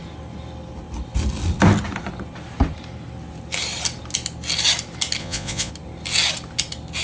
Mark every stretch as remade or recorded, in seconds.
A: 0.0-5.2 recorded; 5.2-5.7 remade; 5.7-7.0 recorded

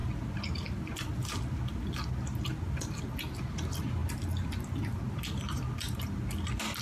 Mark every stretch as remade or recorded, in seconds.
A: 0.0-6.8 recorded